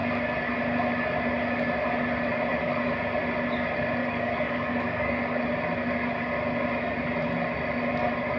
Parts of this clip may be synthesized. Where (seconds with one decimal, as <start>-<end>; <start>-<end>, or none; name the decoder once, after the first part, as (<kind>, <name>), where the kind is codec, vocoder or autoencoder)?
4.0-5.4 (codec, DAC)

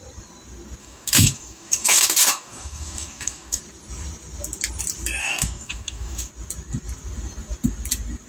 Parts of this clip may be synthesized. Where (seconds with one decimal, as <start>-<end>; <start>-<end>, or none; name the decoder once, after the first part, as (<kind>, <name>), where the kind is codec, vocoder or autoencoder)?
0.8-3.6 (codec, DAC); 5.2-6.3